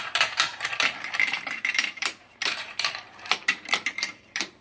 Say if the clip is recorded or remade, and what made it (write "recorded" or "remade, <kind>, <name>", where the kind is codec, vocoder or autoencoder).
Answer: remade, vocoder, BigVGAN v2